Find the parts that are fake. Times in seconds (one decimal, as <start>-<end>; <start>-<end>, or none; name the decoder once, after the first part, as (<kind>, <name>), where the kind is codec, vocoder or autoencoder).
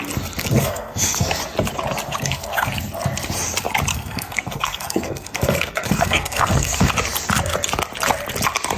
0.4-1.3 (codec, SNAC); 2.1-2.7; 3.9-6.9